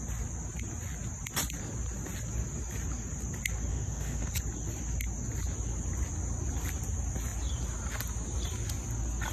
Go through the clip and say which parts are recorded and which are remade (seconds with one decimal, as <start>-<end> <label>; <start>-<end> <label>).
0.0-3.7 recorded; 3.7-4.3 remade; 4.3-9.3 recorded